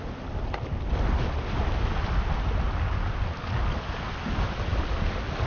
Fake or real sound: real